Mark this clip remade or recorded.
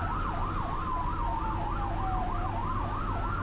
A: recorded